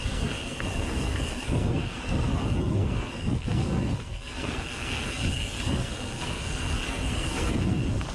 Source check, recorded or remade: remade